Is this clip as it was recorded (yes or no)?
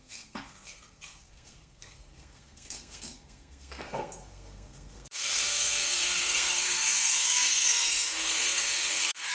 no